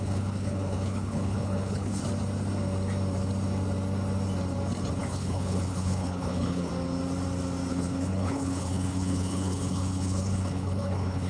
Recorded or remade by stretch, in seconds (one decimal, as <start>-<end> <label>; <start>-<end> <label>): 0.0-2.0 remade; 2.0-5.0 recorded; 5.0-6.7 remade; 6.7-7.7 recorded; 7.7-11.3 remade